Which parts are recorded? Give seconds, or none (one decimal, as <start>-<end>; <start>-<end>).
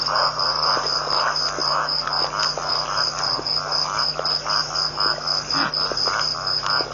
0.0-6.9